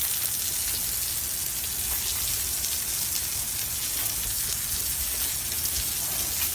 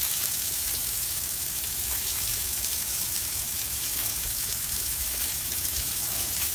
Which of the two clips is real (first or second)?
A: first